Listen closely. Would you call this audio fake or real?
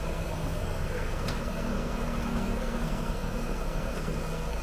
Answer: fake